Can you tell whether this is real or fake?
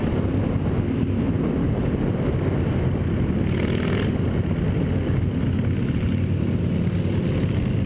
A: real